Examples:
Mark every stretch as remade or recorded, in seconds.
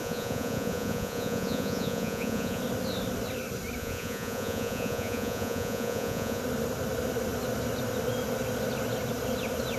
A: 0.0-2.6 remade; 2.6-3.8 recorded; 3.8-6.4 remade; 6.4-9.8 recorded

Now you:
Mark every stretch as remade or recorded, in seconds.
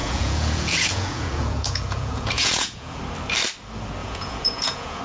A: 0.0-3.0 remade; 3.0-4.0 recorded; 4.0-5.0 remade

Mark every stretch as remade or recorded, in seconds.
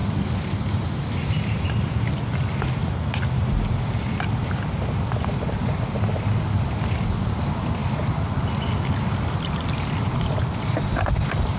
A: 0.0-11.6 recorded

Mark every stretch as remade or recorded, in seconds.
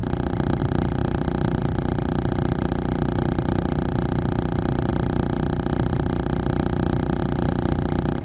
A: 0.0-8.2 recorded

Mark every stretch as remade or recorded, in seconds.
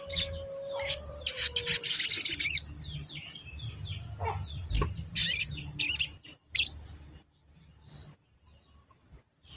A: 0.0-9.6 recorded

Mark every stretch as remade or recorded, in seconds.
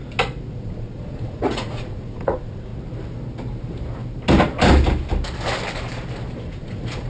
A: 0.0-0.5 recorded; 0.5-2.7 remade; 2.7-6.4 recorded; 6.4-7.1 remade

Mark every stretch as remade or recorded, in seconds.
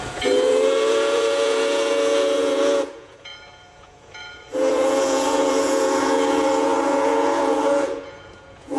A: 0.0-8.8 remade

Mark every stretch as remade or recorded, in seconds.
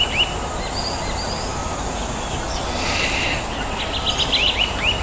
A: 0.0-5.0 recorded